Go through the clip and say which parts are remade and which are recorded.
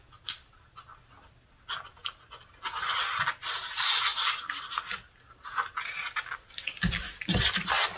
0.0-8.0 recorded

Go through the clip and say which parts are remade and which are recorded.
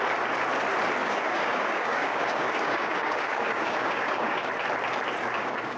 0.0-1.0 recorded; 1.0-4.5 remade; 4.5-5.2 recorded; 5.2-5.8 remade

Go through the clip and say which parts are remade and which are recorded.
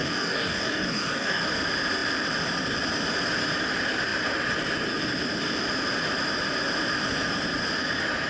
0.0-1.4 remade; 1.4-8.3 recorded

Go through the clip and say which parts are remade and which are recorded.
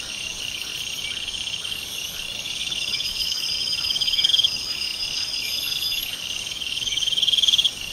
0.0-0.7 remade; 0.7-1.6 recorded; 1.6-7.9 remade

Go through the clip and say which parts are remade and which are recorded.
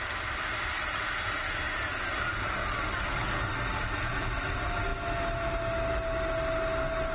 0.0-2.6 recorded; 2.6-3.5 remade; 3.5-7.1 recorded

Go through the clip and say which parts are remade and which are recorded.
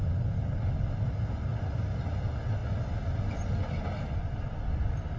0.0-5.2 recorded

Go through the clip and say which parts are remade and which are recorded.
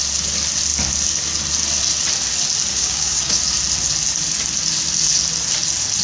0.0-2.7 recorded; 2.7-3.4 remade; 3.4-6.0 recorded